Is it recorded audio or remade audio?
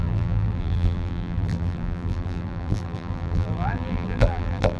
remade